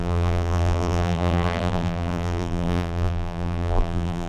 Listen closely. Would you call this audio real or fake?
fake